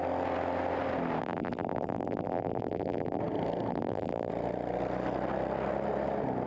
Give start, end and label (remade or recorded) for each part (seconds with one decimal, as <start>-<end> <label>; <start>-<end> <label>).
0.0-1.2 recorded; 1.2-3.2 remade; 3.2-3.7 recorded; 3.7-4.3 remade; 4.3-6.5 recorded